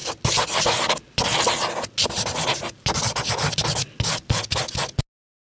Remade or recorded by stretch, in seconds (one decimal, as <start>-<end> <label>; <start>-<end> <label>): 0.0-5.5 recorded